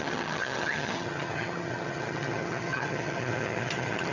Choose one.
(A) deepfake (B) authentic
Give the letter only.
A